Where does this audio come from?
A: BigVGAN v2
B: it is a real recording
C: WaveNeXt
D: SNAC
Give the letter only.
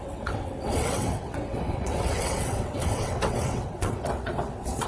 C